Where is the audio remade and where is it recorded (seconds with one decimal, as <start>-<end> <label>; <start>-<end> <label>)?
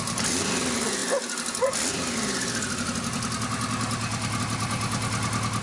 0.0-5.6 recorded